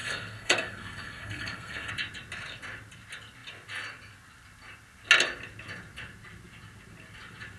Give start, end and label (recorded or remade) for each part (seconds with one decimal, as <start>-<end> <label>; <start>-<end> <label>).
0.0-1.9 remade; 1.9-7.6 recorded